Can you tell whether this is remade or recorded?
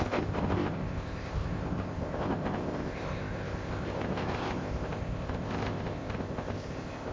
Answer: remade